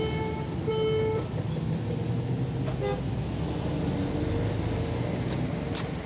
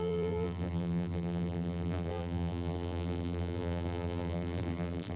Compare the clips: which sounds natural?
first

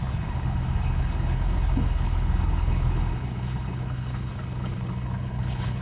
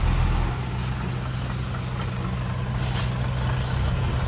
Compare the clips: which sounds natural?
second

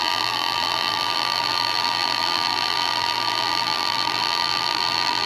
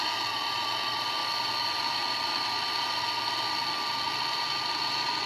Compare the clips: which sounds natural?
second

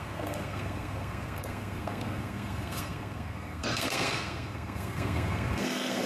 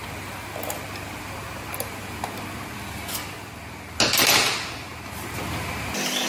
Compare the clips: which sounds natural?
second